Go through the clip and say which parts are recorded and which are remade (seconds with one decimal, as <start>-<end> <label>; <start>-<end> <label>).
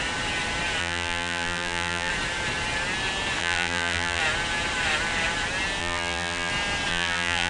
0.0-0.8 recorded; 0.8-2.1 remade; 2.1-3.4 recorded; 3.4-4.2 remade; 4.2-5.8 recorded; 5.8-6.5 remade; 6.5-6.9 recorded; 6.9-7.5 remade